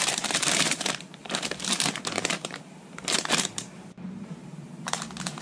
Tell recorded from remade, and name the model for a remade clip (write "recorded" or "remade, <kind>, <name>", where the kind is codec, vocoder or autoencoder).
remade, vocoder, BigVGAN v2